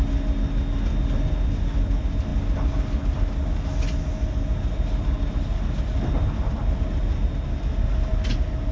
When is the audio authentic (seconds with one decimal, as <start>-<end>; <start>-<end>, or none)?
0.0-8.7